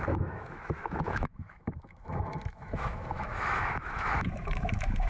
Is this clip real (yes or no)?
no